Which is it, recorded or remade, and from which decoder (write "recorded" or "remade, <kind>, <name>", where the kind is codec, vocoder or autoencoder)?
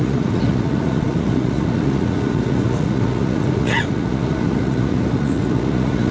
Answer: remade, vocoder, Vocos